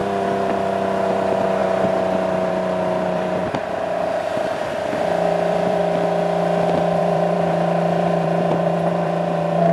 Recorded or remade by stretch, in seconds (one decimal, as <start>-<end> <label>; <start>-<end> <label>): 0.0-3.4 remade; 3.4-4.9 recorded; 4.9-5.8 remade; 5.8-7.0 recorded; 7.0-9.7 remade